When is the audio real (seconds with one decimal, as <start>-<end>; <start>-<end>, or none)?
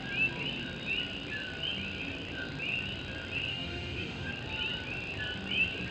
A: 0.0-3.5; 4.3-5.9